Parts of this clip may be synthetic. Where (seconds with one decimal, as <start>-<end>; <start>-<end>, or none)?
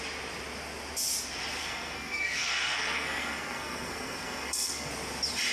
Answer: 1.6-4.9